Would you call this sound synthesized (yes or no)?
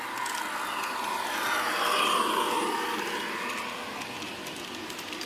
no